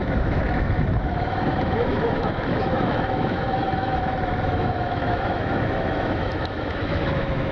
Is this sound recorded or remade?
remade